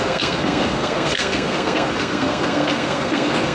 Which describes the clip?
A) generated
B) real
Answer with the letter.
A